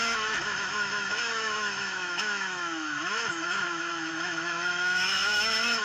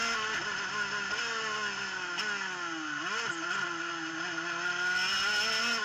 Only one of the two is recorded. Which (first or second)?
second